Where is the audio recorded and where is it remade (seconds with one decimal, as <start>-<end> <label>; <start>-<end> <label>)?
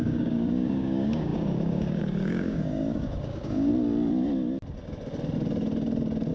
0.0-3.7 remade; 3.7-6.3 recorded